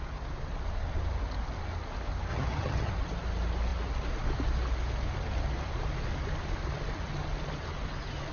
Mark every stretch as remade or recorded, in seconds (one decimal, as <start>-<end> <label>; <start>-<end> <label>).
0.0-2.3 recorded; 2.3-2.9 remade; 2.9-8.3 recorded